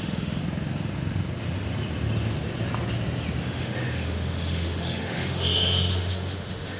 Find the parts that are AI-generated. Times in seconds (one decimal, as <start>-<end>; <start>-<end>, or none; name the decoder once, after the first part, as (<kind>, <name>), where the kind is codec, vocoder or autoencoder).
0.0-0.4 (autoencoder, DAC-VAE); 3.4-6.8